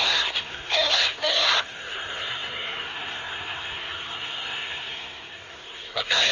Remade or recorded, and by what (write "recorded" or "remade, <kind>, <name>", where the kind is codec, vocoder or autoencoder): remade, codec, SNAC